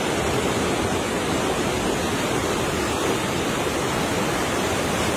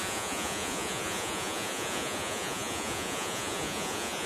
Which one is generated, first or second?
second